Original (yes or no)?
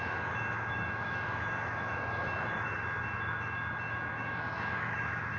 no